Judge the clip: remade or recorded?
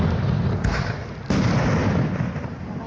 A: recorded